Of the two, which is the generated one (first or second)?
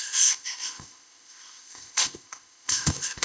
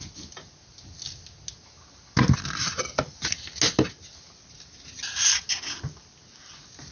first